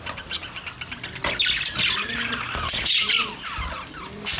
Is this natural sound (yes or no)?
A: yes